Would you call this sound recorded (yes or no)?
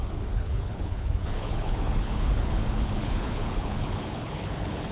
no